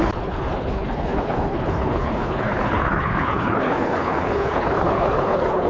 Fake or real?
fake